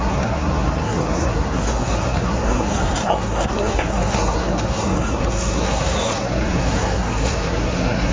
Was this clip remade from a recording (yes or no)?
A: yes